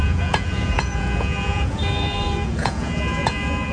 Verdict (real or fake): fake